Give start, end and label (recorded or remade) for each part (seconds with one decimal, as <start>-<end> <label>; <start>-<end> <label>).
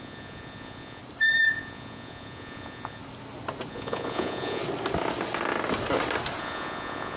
0.0-1.0 remade; 1.0-1.5 recorded; 1.5-3.0 remade; 3.0-3.7 recorded; 3.7-4.6 remade; 4.6-6.4 recorded; 6.4-7.2 remade